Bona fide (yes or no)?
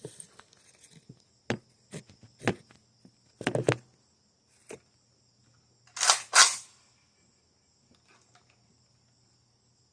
yes